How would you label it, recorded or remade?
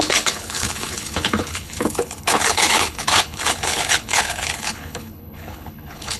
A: remade